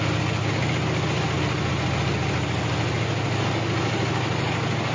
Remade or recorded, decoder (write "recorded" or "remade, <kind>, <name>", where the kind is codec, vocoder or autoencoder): recorded